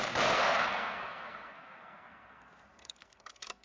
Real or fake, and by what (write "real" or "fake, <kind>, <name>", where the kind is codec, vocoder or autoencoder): fake, codec, SNAC